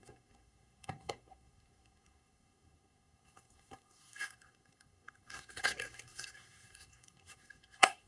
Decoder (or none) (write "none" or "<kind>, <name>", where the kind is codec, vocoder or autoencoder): codec, SNAC